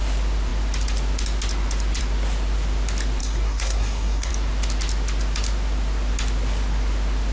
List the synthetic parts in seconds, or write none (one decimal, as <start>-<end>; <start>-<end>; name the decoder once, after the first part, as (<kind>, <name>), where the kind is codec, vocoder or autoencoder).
3.2-4.3 (codec, SNAC)